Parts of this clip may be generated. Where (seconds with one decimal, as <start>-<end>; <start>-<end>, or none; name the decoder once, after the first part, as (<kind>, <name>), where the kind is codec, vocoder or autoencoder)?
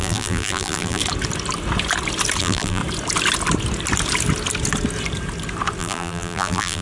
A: 0.0-1.0 (vocoder, BigVGAN v2); 2.4-2.8; 5.8-6.8